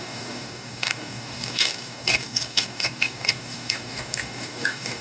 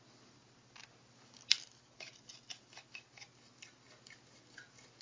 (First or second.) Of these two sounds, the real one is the second